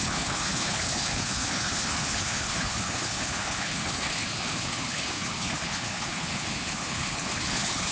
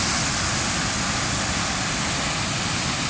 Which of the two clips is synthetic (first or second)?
first